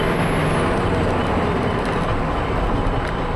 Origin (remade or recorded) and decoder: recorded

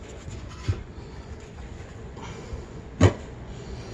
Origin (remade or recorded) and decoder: remade, vocoder, Vocos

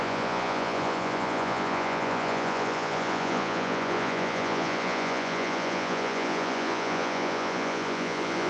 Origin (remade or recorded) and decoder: remade, vocoder, Vocos